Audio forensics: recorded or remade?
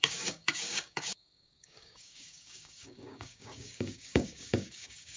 remade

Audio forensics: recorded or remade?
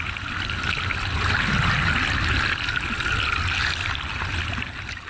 recorded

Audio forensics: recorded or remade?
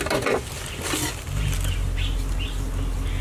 recorded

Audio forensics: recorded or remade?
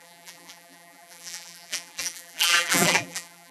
remade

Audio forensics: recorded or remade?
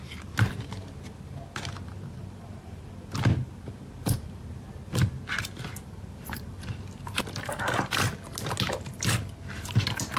recorded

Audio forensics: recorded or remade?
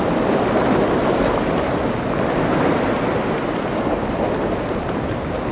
recorded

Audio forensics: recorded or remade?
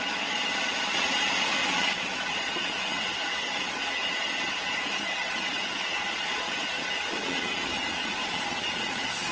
remade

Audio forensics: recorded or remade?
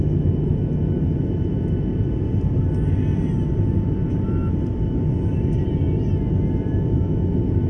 recorded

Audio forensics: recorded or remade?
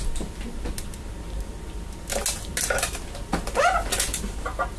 recorded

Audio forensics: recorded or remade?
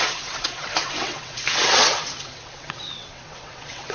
remade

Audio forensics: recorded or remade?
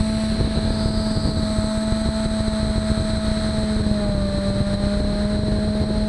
recorded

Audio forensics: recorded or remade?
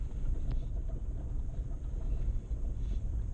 recorded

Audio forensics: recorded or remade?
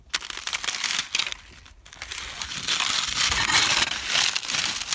recorded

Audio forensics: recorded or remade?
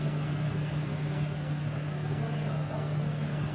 remade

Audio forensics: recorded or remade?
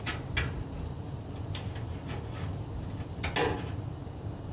recorded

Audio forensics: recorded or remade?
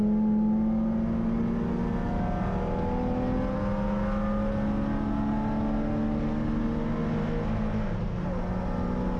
recorded